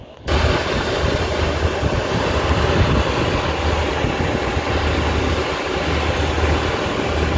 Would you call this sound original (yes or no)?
yes